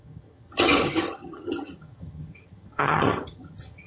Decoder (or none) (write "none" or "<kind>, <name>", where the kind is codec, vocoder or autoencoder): vocoder, HiFi-GAN